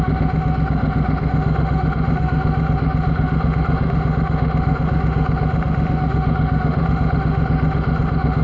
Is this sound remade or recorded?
remade